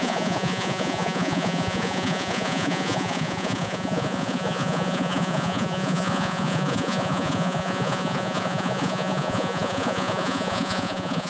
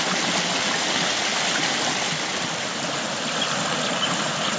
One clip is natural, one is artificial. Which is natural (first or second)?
second